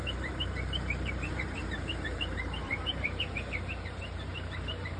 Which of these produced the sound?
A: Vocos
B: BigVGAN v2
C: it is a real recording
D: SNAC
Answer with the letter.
B